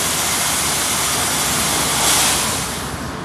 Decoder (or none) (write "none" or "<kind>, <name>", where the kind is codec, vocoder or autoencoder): none